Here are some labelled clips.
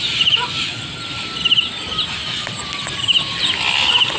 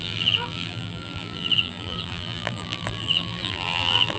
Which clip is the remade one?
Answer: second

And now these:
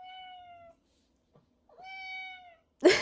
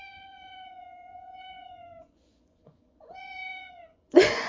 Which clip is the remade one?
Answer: second